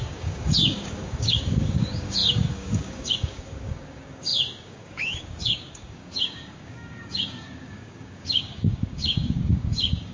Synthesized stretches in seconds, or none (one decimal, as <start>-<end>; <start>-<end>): 0.0-10.1